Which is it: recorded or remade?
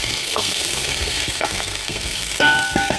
remade